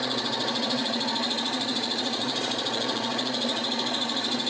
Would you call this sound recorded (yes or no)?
no